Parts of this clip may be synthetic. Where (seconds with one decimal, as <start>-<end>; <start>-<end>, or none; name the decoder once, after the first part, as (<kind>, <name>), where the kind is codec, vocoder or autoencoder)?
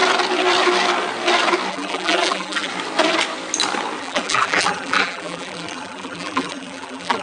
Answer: 1.7-2.7 (vocoder, BigVGAN v2); 4.0-7.2